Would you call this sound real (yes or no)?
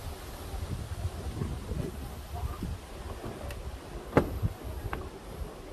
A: yes